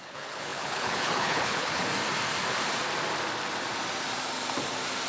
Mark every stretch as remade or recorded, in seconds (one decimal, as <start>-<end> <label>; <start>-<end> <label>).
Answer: 0.0-1.8 remade; 1.8-5.1 recorded